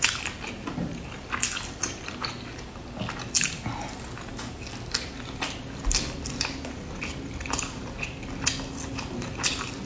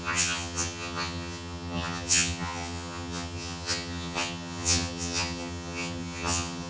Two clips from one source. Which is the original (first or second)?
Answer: first